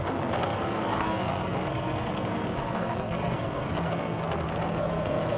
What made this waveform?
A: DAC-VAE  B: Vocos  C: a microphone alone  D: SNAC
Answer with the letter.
D